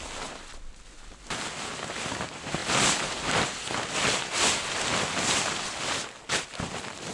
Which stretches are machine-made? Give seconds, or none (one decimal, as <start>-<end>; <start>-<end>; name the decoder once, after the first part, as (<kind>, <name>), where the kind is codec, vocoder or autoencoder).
none